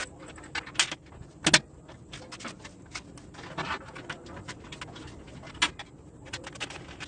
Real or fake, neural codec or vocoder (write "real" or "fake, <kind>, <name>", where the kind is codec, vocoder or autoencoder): real